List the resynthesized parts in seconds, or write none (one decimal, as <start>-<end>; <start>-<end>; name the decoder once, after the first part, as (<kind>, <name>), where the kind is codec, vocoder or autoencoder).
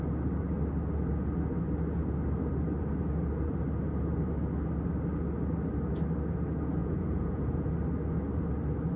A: 6.8-7.7 (vocoder, Vocos)